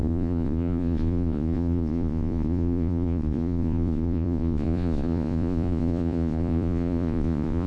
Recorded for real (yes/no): no